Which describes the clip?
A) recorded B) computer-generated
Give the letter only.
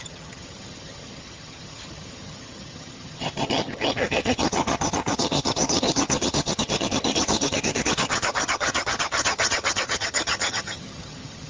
B